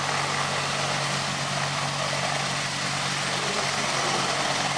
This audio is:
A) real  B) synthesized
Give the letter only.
A